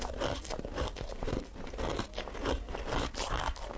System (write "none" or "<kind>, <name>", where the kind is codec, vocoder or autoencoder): none